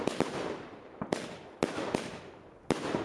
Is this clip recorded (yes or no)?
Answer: yes